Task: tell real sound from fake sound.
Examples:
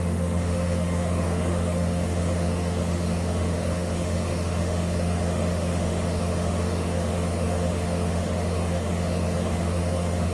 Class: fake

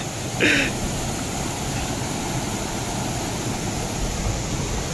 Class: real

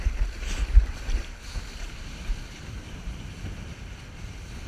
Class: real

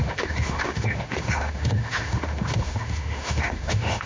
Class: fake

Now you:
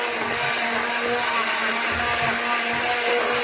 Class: real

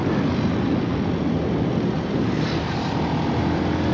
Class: real